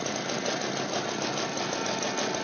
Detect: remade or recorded recorded